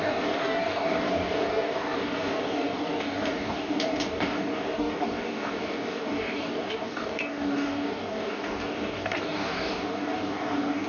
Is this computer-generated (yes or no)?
yes